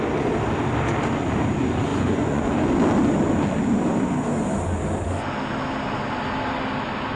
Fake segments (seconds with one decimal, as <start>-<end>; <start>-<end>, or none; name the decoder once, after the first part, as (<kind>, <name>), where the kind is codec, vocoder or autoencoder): 1.9-2.8 (vocoder, Vocos)